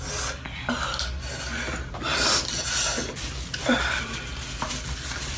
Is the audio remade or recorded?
recorded